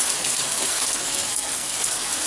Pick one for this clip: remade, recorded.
remade